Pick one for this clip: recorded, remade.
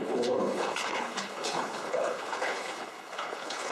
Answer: remade